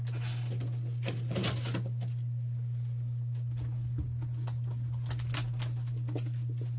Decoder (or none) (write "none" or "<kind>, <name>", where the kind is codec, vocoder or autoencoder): none